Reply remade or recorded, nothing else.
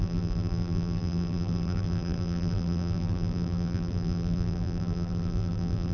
remade